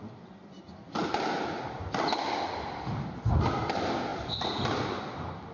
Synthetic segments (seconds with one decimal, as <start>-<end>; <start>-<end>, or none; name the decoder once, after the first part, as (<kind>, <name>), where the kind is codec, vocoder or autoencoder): none